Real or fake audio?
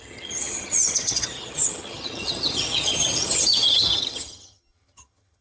fake